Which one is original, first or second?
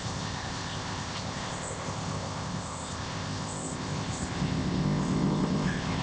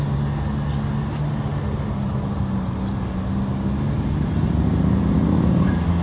second